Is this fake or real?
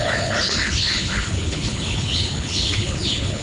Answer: fake